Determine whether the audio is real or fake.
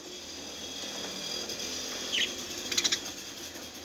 real